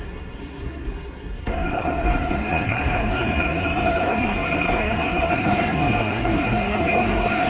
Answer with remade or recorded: remade